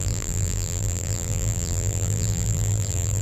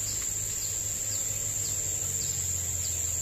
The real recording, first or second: second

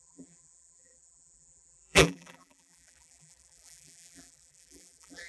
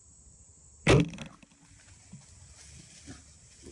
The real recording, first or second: second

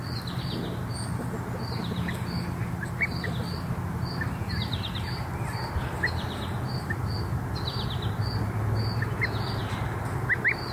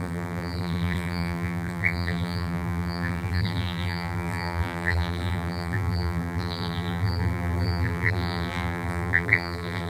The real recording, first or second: first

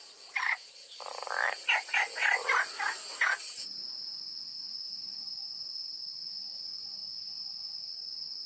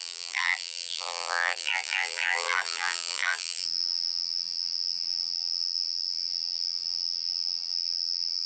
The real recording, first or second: first